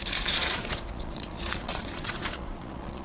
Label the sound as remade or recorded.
remade